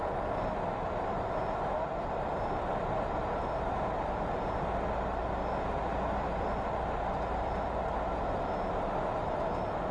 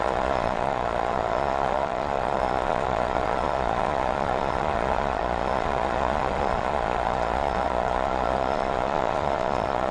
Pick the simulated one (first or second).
second